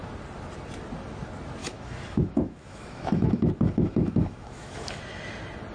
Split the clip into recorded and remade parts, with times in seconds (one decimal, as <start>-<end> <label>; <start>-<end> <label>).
0.0-1.6 recorded; 1.6-5.0 remade; 5.0-5.7 recorded

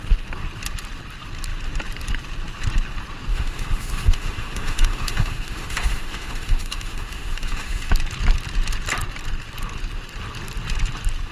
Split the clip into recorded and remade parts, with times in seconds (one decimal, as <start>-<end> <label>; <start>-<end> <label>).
0.0-3.3 recorded; 3.3-7.9 remade; 7.9-11.3 recorded

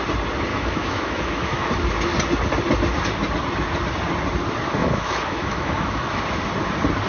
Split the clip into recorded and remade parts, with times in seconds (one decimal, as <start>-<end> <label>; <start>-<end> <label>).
0.0-0.5 recorded; 0.5-1.8 remade; 1.8-4.8 recorded; 4.8-6.2 remade; 6.2-7.1 recorded

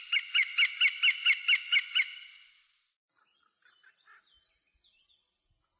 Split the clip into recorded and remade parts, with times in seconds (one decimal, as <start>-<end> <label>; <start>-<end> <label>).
0.0-5.8 recorded

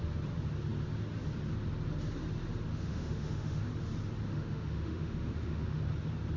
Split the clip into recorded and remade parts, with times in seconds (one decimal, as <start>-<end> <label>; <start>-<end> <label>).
0.0-2.7 recorded; 2.7-3.6 remade; 3.6-4.3 recorded; 4.3-5.8 remade; 5.8-6.4 recorded

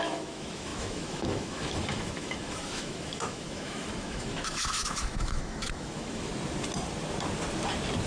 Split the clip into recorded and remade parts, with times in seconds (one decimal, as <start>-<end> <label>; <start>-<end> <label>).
0.0-6.3 remade; 6.3-8.1 recorded

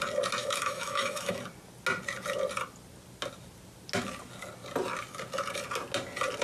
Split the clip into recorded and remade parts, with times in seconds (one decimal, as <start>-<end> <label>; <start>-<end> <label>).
0.0-0.4 recorded; 0.4-1.4 remade; 1.4-6.4 recorded

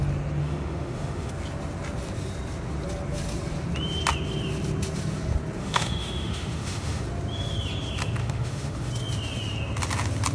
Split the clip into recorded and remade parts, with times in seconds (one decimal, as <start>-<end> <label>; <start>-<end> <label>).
0.0-0.4 recorded; 0.4-1.3 remade; 1.3-5.6 recorded; 5.6-7.0 remade; 7.0-8.2 recorded; 8.2-8.9 remade; 8.9-10.3 recorded